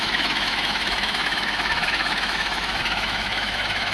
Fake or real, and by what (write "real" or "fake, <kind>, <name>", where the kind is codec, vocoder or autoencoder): fake, autoencoder, DAC-VAE